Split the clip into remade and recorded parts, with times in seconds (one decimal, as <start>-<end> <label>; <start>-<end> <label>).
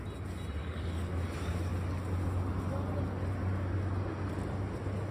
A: 0.0-0.6 recorded; 0.6-1.1 remade; 1.1-5.1 recorded